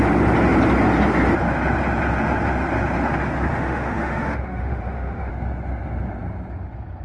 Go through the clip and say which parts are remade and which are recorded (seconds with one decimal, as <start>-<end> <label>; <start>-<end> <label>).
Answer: 0.0-3.5 recorded; 3.5-5.3 remade; 5.3-7.0 recorded